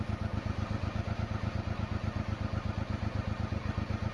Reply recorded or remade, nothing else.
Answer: recorded